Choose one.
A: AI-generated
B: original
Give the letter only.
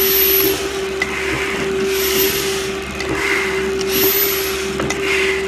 B